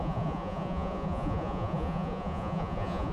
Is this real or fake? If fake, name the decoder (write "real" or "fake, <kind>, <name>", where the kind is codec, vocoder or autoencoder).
fake, vocoder, Vocos